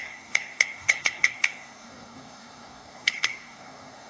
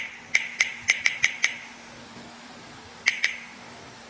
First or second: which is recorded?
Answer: second